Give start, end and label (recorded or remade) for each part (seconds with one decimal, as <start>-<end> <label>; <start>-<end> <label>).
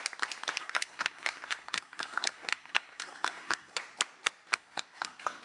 0.0-0.6 recorded; 0.6-3.8 remade; 3.8-4.5 recorded; 4.5-5.4 remade